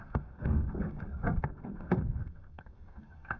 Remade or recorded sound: remade